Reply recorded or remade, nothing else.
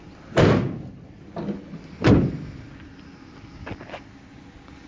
recorded